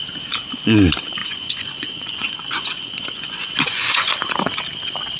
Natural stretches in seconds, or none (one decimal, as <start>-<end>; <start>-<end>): 0.0-1.2; 4.3-5.2